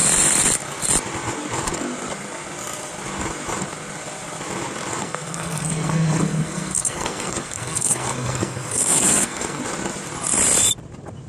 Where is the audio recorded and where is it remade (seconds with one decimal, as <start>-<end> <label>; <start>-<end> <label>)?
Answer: 0.0-5.0 recorded; 5.0-9.6 remade; 9.6-11.3 recorded